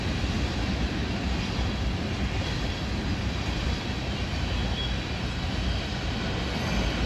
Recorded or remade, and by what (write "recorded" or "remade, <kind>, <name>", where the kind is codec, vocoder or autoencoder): recorded